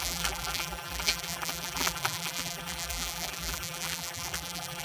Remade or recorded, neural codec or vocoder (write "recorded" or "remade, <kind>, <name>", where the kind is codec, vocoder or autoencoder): remade, vocoder, BigVGAN v2